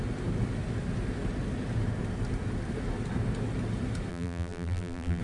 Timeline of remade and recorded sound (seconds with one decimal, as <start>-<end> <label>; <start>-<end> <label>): 0.0-4.1 recorded; 4.1-5.2 remade